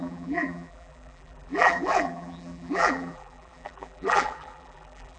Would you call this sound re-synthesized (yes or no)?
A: yes